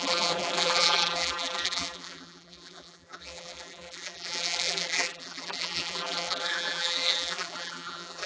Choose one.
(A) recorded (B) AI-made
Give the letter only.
B